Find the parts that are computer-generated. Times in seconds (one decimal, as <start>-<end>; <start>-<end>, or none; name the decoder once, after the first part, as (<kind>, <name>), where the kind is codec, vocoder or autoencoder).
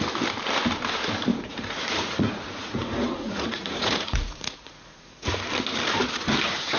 1.3-5.3 (vocoder, Vocos)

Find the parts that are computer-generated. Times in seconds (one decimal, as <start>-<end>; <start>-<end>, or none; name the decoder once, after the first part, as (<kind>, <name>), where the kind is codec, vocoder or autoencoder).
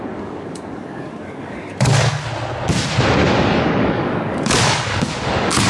0.0-1.9 (codec, DAC); 3.4-5.7